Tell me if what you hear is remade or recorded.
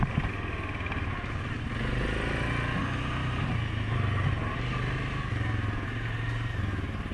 recorded